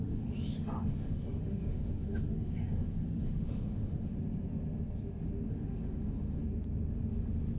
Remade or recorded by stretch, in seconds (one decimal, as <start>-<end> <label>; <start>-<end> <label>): 0.0-4.1 remade; 4.1-5.5 recorded; 5.5-6.4 remade; 6.4-7.6 recorded